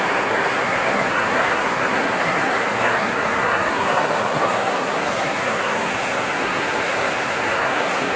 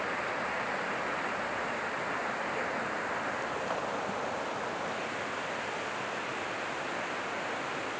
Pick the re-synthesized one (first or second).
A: first